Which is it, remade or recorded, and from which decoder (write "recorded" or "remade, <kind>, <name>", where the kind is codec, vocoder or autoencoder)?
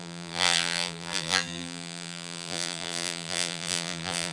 remade, vocoder, BigVGAN v2